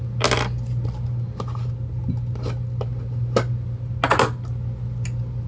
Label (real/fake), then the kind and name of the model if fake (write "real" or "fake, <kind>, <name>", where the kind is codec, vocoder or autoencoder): real